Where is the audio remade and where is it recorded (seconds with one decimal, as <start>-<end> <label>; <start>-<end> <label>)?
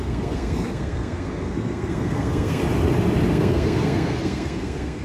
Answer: 0.0-2.6 remade; 2.6-3.3 recorded; 3.3-5.0 remade